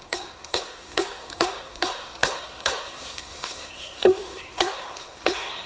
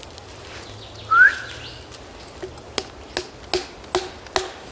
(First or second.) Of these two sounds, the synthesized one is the first